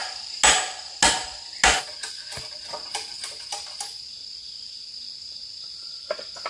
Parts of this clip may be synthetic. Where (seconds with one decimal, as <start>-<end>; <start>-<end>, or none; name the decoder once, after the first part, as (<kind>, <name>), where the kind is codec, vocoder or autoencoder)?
none